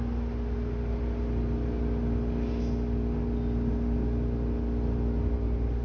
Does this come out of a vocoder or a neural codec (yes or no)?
no